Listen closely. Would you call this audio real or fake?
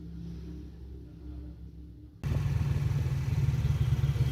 real